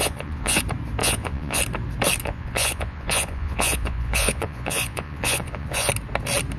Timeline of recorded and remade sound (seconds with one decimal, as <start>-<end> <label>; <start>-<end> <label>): 0.0-0.6 remade; 0.6-1.0 recorded; 1.0-1.6 remade; 1.6-2.2 recorded; 2.2-5.9 remade; 5.9-6.6 recorded